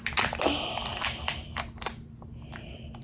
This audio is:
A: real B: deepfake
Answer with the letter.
A